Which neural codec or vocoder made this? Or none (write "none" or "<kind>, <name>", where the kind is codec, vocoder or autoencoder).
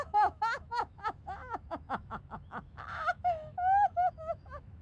autoencoder, DAC-VAE